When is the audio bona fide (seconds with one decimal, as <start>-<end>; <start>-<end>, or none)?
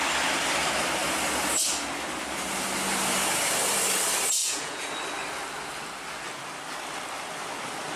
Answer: 0.0-4.4; 4.9-8.0